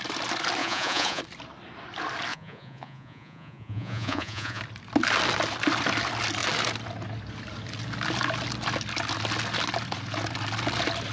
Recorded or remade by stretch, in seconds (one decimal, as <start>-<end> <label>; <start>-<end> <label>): 0.0-0.6 recorded; 0.6-1.2 remade; 1.2-2.3 recorded; 2.3-4.6 remade; 4.6-11.1 recorded